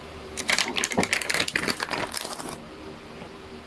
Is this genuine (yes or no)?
no